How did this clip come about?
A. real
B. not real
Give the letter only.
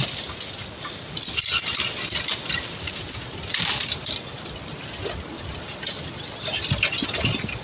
A